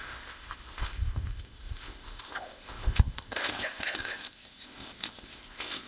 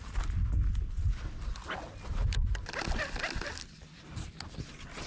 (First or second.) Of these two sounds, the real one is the second